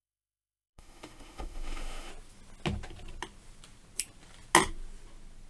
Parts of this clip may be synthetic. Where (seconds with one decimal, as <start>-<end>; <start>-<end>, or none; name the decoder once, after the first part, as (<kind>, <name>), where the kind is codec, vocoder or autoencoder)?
0.0-2.1 (autoencoder, DAC-VAE)